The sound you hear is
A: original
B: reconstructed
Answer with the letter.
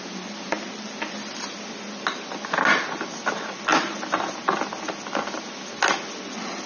A